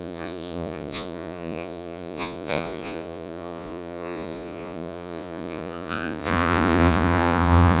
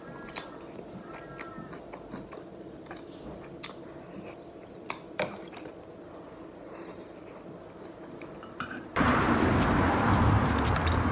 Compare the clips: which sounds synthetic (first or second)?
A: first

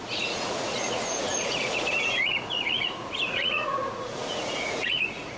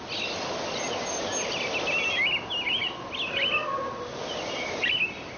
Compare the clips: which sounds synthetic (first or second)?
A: first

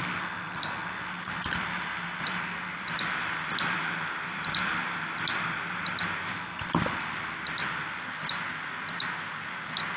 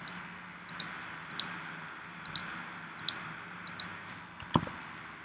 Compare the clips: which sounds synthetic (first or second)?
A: first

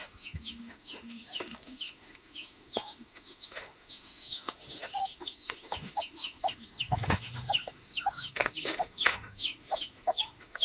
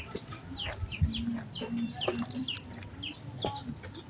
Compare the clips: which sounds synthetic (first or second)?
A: first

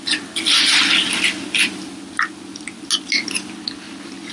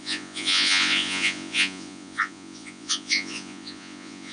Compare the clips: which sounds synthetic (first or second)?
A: second